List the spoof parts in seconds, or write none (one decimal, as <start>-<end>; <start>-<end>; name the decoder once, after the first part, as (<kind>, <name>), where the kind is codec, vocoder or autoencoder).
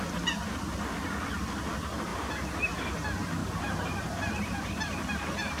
2.1-2.6 (vocoder, BigVGAN v2); 3.4-5.0